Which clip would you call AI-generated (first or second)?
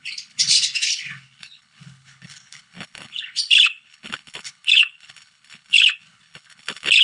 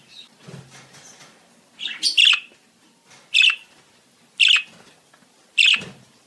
first